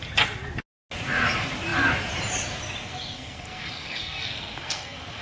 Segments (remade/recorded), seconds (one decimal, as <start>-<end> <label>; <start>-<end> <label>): 0.0-2.8 recorded; 2.8-5.2 remade